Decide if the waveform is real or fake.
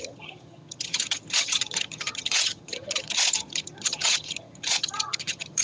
fake